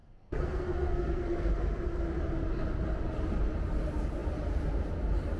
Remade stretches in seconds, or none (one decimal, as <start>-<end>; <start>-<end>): 0.0-1.5